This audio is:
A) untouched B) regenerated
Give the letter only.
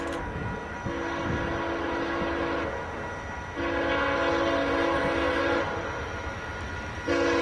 A